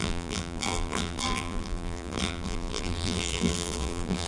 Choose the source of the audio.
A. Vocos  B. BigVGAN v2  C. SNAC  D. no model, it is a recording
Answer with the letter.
B